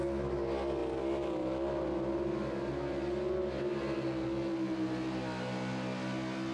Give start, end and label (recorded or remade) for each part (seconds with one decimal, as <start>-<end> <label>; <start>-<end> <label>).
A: 0.0-6.5 recorded